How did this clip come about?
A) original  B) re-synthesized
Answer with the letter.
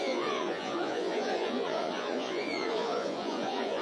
B